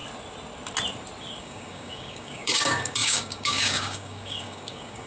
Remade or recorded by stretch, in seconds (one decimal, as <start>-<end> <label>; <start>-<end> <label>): 0.0-1.4 recorded; 1.4-5.1 remade